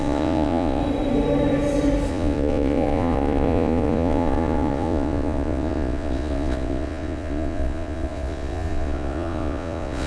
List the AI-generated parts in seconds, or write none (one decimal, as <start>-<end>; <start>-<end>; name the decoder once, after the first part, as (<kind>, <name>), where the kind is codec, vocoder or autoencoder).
0.0-0.8 (vocoder, Vocos); 2.1-10.1